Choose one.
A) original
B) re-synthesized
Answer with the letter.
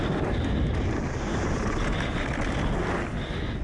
A